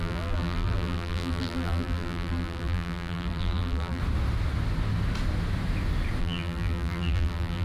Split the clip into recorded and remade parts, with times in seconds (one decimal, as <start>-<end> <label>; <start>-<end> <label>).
0.0-4.0 remade; 4.0-6.2 recorded; 6.2-7.6 remade